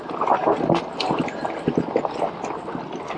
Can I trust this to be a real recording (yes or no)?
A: yes